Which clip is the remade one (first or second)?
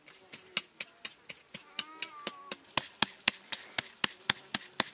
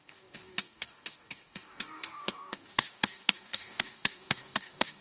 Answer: second